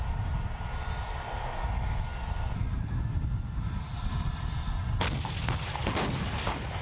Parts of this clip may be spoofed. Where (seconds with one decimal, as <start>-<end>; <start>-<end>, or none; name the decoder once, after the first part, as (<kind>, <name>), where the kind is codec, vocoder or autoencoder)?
none